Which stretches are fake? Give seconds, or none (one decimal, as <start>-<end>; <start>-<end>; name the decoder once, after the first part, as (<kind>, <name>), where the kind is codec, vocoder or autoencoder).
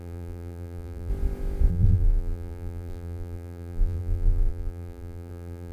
0.0-1.1 (vocoder, BigVGAN v2); 1.7-5.7